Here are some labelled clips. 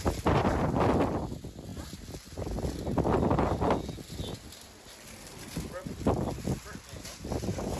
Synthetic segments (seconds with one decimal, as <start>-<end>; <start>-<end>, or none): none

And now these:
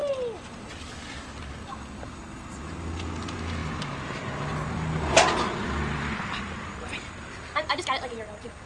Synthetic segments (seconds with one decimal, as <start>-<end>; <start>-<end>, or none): none

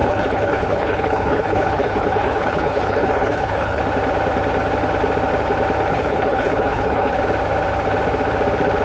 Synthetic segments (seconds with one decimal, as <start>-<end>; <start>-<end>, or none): 0.0-3.8; 5.9-7.2

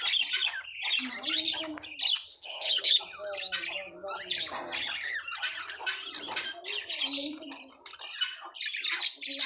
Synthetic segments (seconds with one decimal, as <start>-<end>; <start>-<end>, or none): 2.3-3.0